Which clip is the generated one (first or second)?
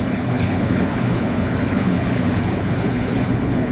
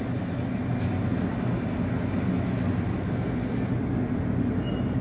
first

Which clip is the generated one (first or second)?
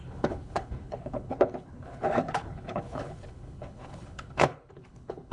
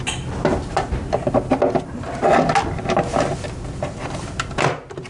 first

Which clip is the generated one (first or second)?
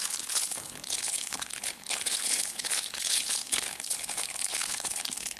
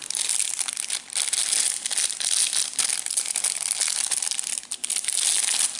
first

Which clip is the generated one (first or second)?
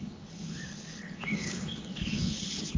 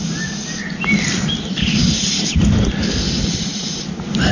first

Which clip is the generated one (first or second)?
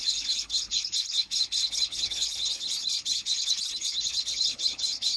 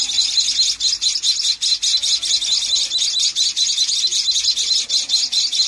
first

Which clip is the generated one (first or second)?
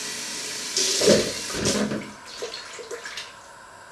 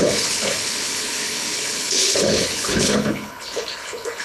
second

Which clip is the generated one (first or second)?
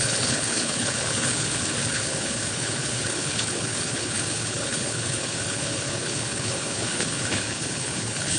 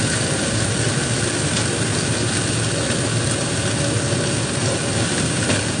first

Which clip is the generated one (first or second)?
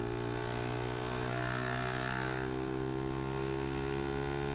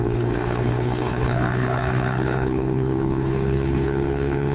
second